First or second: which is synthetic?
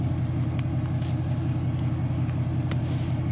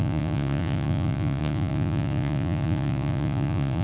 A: second